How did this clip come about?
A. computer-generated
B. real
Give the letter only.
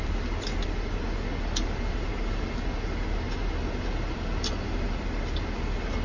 B